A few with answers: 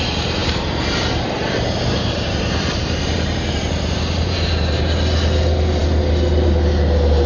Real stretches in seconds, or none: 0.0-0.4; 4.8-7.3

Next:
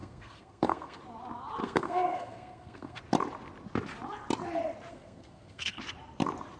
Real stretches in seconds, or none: 1.0-1.6; 3.0-4.9; 5.8-6.6

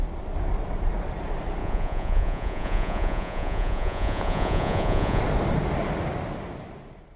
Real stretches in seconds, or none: 0.0-1.6; 5.2-7.2

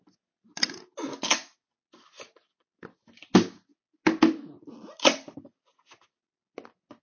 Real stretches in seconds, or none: 0.0-7.0